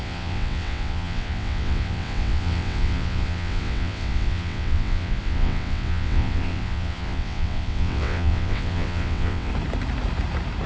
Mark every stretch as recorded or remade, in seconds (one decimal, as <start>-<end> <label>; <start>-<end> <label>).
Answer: 0.0-9.5 remade; 9.5-10.7 recorded

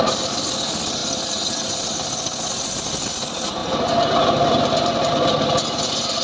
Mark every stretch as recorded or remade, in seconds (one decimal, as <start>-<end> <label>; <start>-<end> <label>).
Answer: 0.0-6.2 recorded

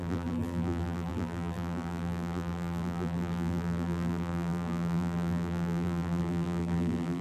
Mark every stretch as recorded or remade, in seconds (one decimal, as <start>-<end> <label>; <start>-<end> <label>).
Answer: 0.0-7.2 remade

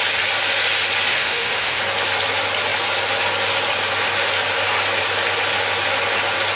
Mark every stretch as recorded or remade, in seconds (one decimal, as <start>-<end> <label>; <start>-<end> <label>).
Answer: 0.0-1.1 recorded; 1.1-1.8 remade; 1.8-6.6 recorded

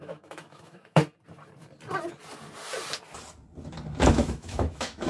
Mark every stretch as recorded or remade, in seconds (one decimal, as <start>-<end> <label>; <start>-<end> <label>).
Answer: 0.0-1.0 remade; 1.0-4.1 recorded; 4.1-5.1 remade